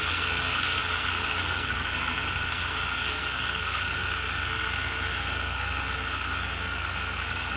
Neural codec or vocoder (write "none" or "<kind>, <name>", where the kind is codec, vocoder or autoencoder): codec, SNAC